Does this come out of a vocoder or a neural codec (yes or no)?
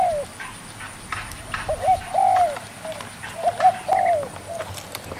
no